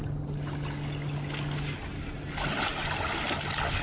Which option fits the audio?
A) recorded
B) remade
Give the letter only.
A